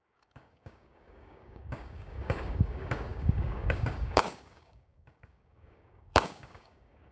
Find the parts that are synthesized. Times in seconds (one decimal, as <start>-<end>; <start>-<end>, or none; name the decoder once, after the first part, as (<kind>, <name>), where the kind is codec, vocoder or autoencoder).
0.0-7.1 (codec, DAC)